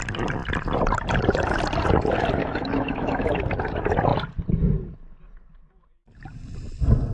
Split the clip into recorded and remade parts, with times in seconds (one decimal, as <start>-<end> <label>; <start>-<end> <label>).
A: 0.0-2.4 recorded; 2.4-3.4 remade; 3.4-7.1 recorded